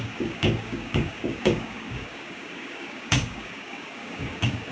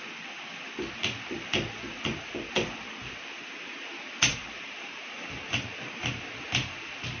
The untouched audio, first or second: second